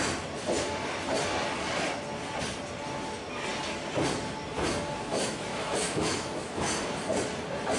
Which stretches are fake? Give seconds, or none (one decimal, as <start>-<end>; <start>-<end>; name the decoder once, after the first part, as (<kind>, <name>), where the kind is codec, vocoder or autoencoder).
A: 5.1-6.7 (autoencoder, DAC-VAE)